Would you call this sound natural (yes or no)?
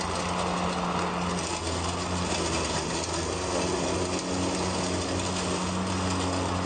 yes